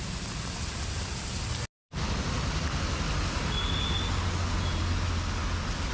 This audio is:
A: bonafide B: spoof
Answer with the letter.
A